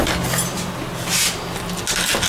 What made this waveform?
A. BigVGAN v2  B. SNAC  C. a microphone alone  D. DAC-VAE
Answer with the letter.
C